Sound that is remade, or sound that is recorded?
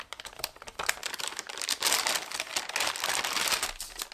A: recorded